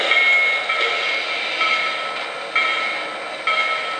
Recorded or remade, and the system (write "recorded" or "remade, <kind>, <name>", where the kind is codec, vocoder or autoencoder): recorded